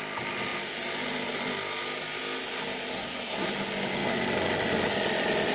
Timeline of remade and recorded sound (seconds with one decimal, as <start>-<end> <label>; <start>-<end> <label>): 0.0-2.9 recorded; 2.9-3.5 remade; 3.5-5.5 recorded